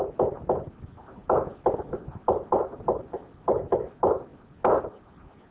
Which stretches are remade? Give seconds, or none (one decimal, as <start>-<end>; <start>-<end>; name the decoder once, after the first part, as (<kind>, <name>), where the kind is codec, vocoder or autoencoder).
none